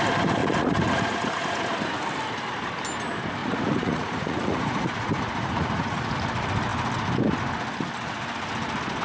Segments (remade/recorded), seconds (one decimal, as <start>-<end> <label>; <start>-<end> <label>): 0.0-0.4 recorded; 0.4-1.7 remade; 1.7-3.4 recorded; 3.4-6.1 remade; 6.1-9.0 recorded